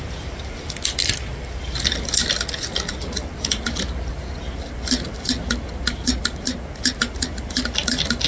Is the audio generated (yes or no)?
no